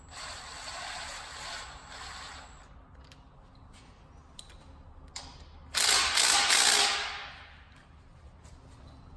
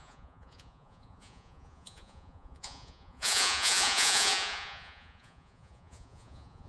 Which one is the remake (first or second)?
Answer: second